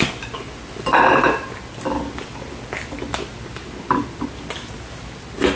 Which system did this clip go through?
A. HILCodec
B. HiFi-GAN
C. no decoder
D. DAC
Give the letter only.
C